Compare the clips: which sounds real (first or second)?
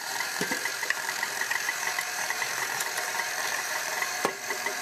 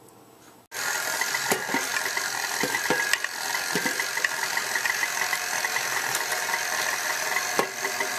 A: second